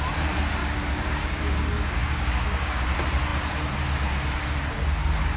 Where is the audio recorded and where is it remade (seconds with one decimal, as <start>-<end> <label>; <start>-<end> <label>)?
0.0-0.6 recorded; 0.6-2.8 remade; 2.8-5.4 recorded